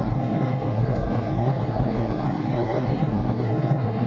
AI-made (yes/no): yes